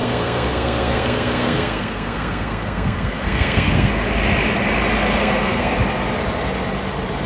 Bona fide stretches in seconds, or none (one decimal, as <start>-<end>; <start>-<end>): 3.9-5.2; 5.7-7.3